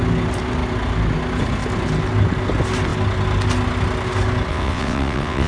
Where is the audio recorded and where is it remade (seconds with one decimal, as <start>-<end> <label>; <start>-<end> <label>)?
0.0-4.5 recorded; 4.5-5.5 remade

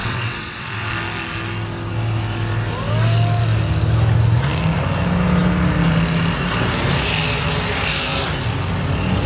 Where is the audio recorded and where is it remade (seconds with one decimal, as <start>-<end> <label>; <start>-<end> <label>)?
0.0-0.9 remade; 0.9-9.3 recorded

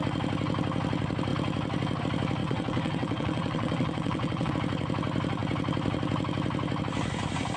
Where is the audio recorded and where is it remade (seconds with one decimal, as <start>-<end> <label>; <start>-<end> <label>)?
0.0-2.4 recorded; 2.4-4.5 remade; 4.5-7.6 recorded

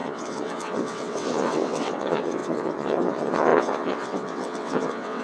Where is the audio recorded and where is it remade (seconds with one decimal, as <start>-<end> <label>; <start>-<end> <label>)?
0.0-5.2 remade

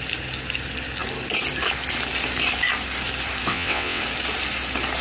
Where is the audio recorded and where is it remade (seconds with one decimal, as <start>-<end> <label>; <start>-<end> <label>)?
0.0-3.5 recorded; 3.5-4.0 remade; 4.0-5.0 recorded

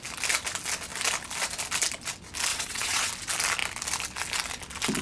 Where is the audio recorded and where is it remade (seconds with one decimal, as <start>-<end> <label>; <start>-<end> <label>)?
0.0-2.5 recorded; 2.5-3.1 remade; 3.1-5.0 recorded

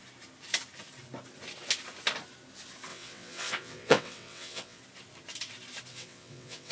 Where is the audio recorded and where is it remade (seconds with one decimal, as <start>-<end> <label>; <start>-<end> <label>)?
0.0-2.9 recorded; 2.9-4.8 remade; 4.8-5.9 recorded; 5.9-6.7 remade

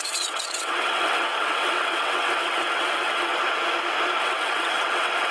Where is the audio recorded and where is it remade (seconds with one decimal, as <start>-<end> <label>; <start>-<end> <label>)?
0.0-3.3 remade; 3.3-4.2 recorded; 4.2-5.3 remade